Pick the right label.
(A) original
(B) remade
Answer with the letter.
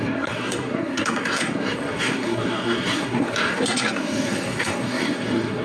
B